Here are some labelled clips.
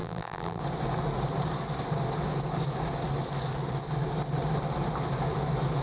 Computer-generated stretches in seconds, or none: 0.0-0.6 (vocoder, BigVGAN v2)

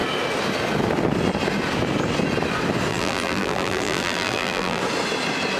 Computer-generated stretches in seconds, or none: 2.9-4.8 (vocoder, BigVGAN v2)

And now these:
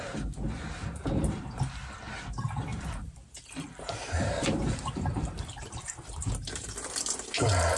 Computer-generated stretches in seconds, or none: 0.8-1.6 (vocoder, BigVGAN v2); 2.7-7.8